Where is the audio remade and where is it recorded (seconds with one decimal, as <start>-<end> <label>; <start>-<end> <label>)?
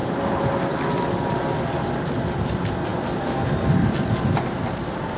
0.0-5.2 recorded